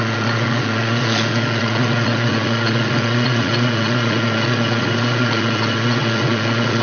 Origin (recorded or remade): remade